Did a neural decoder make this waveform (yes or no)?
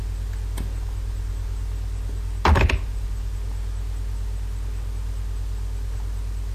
no